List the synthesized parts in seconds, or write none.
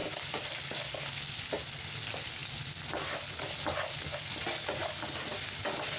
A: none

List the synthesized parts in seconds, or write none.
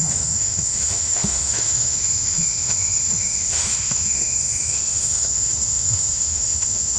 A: 0.0-7.0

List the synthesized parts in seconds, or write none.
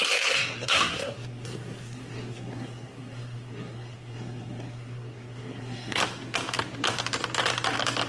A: 0.0-6.0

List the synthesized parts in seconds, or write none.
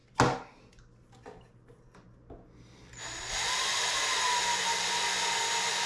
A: none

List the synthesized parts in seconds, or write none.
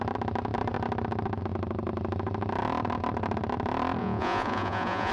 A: 4.0-5.1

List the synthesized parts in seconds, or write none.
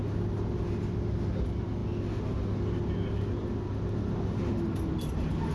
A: none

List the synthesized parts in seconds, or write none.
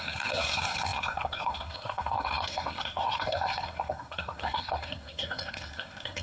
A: 0.0-6.2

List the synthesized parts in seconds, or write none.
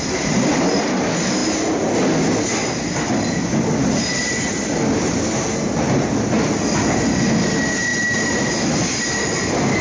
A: none